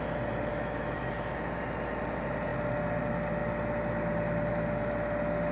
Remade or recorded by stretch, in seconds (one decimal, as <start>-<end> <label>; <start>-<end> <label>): 0.0-0.5 recorded; 0.5-1.6 remade; 1.6-5.5 recorded